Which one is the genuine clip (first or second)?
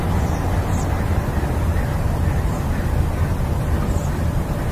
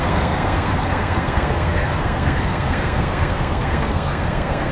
first